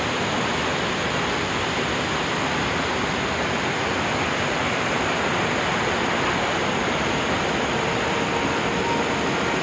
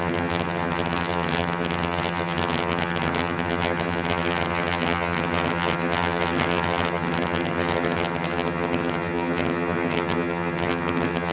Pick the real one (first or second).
first